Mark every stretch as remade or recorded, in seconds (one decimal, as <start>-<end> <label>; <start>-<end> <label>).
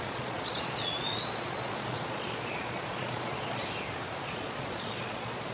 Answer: 0.0-3.6 remade; 3.6-4.2 recorded; 4.2-5.5 remade